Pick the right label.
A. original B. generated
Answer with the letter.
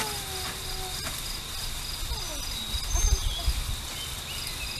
A